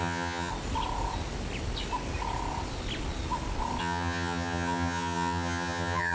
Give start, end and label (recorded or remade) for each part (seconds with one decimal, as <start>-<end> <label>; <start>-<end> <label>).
0.0-0.5 remade; 0.5-3.8 recorded; 3.8-6.1 remade